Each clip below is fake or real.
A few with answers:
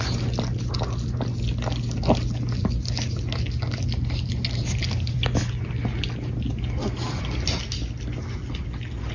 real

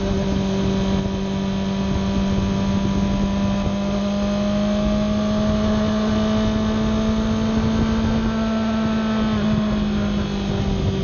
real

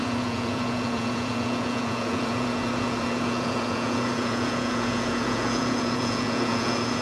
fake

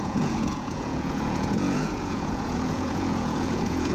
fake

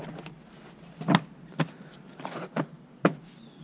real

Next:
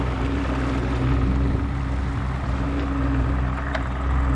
real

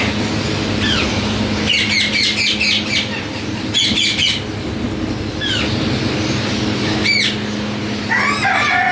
real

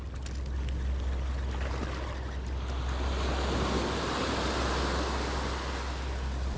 real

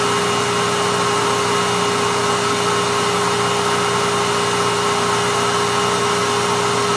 real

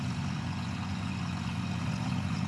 fake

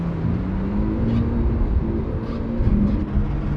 real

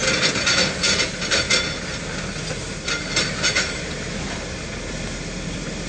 real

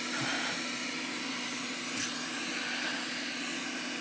real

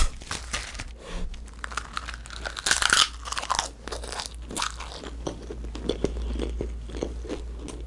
real